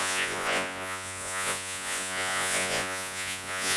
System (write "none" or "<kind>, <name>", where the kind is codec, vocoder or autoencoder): vocoder, Vocos